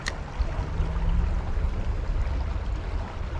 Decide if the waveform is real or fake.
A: real